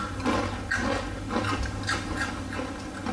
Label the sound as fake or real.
real